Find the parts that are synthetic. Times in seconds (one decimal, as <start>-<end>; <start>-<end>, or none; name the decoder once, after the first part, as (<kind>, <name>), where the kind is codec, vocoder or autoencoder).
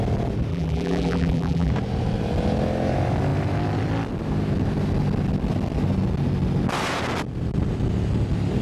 0.5-1.7 (vocoder, BigVGAN v2)